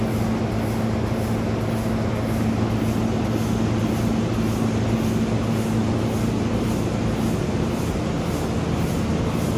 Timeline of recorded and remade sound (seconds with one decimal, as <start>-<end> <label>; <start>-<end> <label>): 0.0-9.6 recorded